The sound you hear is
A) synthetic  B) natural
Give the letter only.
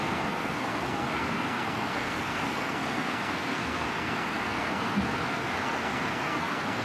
A